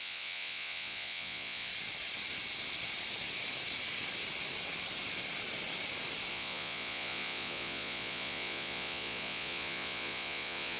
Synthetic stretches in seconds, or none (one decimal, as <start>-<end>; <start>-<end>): 0.0-1.7; 6.3-10.8